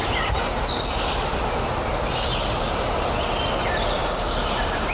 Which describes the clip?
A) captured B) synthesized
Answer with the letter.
A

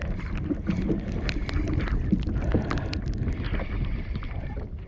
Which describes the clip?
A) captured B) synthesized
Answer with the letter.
A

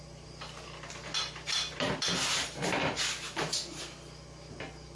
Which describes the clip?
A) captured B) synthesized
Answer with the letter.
A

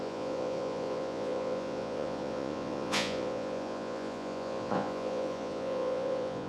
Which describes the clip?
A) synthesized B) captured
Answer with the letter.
A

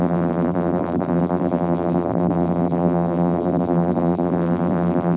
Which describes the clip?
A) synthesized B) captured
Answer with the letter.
A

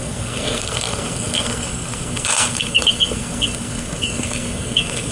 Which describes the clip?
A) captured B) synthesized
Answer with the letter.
B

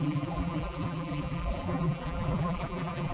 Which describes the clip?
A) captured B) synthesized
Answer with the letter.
B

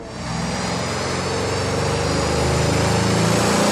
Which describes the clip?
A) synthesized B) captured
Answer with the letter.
B